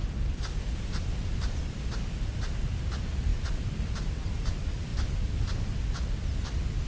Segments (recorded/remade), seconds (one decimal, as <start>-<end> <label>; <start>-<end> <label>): 0.0-6.9 recorded